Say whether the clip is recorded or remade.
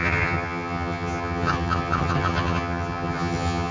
remade